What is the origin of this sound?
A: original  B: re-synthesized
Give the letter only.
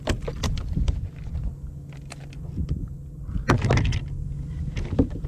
A